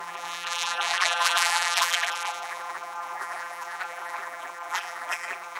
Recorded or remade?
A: remade